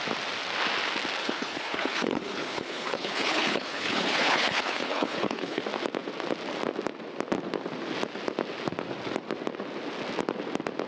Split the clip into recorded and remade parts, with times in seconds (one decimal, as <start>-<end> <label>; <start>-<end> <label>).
0.0-1.2 recorded; 1.2-5.6 remade; 5.6-10.9 recorded